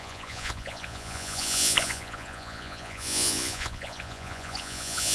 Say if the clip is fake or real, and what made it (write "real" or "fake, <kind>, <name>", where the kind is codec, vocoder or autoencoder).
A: fake, vocoder, Vocos